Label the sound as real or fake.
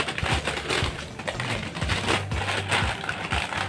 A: real